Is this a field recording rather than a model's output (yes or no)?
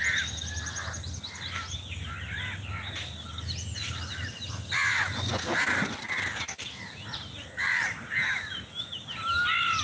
yes